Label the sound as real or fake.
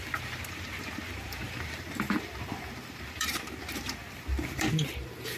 fake